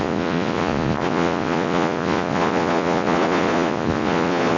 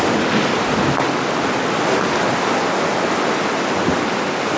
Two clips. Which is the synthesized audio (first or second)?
first